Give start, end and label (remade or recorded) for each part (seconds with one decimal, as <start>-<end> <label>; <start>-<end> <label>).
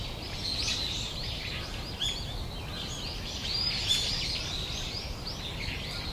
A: 0.0-0.7 recorded; 0.7-1.5 remade; 1.5-3.4 recorded; 3.4-4.1 remade; 4.1-6.1 recorded